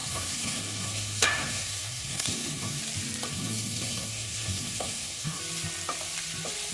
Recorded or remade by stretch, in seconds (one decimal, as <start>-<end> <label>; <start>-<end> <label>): 0.0-2.8 remade; 2.8-3.3 recorded; 3.3-5.4 remade; 5.4-6.7 recorded